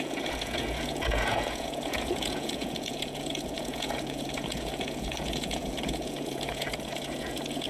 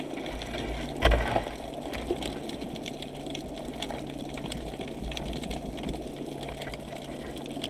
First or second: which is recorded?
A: second